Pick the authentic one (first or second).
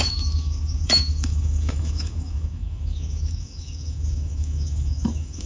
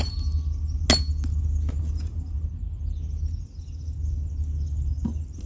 second